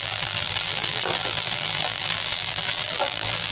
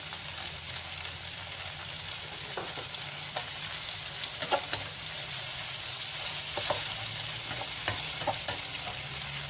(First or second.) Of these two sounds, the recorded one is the second